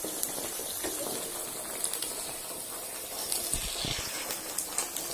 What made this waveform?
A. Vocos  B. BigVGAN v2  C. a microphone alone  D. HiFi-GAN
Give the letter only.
C